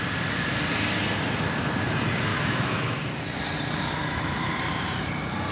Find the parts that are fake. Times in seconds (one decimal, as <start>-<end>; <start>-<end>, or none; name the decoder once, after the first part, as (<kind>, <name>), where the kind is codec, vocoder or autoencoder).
2.3-3.0 (autoencoder, DAC-VAE); 4.0-4.5